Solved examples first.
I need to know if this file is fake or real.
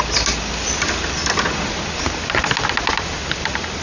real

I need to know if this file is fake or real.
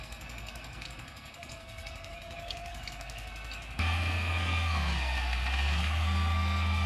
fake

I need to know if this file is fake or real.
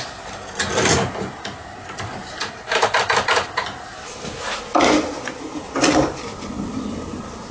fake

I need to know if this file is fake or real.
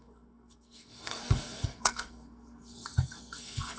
fake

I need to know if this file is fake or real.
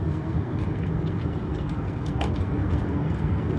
fake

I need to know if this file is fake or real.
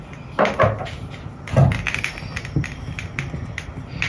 real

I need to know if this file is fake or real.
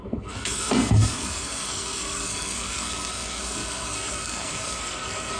fake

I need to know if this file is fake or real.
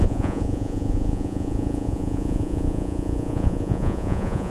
fake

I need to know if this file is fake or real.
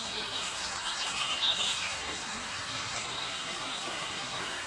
fake